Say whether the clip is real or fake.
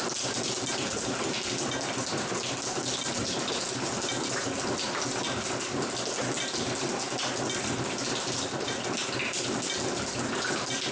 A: real